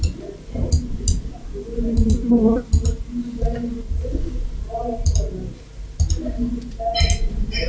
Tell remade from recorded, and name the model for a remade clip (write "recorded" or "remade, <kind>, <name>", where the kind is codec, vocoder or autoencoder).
recorded